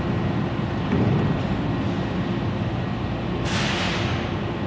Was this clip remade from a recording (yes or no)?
no